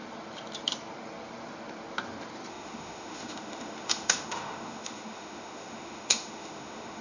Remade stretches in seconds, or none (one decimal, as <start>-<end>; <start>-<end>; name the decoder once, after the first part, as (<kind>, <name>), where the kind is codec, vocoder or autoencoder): 2.5-7.0 (autoencoder, DAC-VAE)